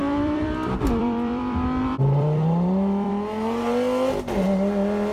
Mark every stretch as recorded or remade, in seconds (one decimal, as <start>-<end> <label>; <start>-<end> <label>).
0.0-3.1 remade; 3.1-5.1 recorded